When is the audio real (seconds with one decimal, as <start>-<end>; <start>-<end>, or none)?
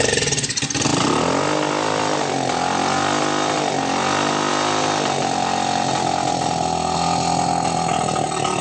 0.0-8.6